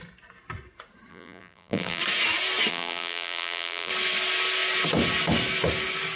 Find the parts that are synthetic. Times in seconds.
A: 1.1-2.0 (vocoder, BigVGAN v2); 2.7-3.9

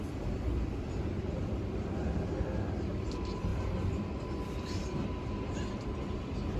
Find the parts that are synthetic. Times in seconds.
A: none

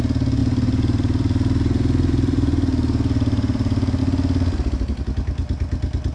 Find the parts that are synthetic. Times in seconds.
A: 0.4-4.0 (vocoder, BigVGAN v2)

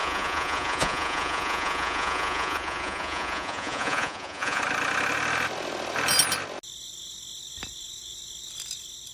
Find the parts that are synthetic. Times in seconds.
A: 0.0-4.6 (vocoder, Vocos)